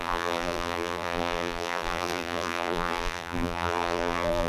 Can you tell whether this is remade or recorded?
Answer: remade